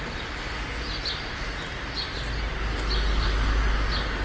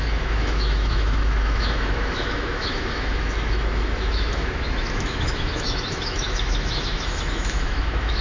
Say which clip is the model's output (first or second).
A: second